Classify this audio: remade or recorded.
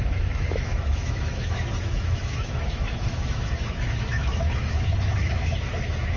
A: remade